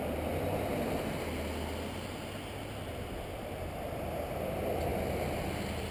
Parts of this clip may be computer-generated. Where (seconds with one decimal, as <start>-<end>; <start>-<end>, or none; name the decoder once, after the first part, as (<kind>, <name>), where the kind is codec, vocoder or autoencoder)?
none